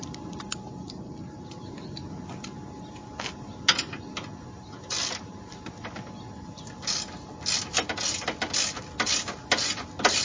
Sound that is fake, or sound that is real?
real